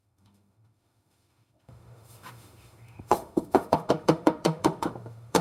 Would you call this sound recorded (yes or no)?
no